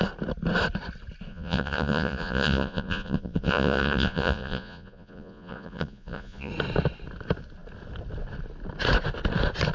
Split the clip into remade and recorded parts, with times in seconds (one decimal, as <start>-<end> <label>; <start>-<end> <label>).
0.0-1.3 recorded; 1.3-6.5 remade; 6.5-9.7 recorded